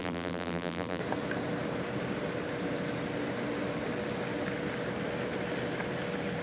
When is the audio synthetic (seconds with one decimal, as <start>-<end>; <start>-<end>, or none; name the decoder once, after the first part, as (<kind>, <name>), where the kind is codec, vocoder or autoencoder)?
0.0-1.0 (vocoder, BigVGAN v2)